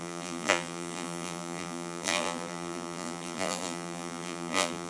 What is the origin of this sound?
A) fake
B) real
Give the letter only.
A